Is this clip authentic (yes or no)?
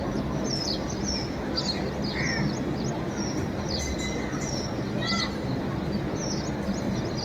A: yes